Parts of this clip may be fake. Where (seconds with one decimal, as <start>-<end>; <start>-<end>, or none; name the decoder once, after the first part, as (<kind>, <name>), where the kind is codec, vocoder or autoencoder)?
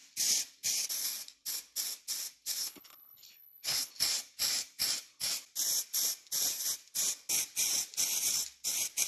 2.6-3.9 (codec, HILCodec)